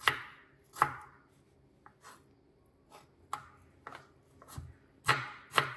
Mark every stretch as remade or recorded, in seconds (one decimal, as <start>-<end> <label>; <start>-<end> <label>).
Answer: 0.0-5.8 recorded

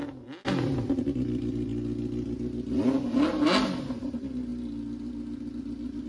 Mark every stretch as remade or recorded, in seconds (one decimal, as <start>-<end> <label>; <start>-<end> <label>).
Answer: 0.0-6.1 recorded

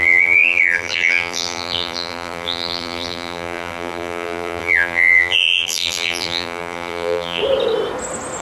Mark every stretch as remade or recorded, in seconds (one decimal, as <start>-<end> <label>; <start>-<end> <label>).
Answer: 0.0-7.4 remade; 7.4-8.4 recorded

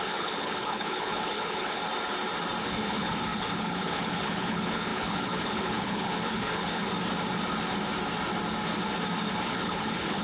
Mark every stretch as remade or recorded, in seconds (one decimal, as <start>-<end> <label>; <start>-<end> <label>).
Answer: 0.0-1.8 remade; 1.8-2.6 recorded; 2.6-6.8 remade; 6.8-9.4 recorded; 9.4-10.2 remade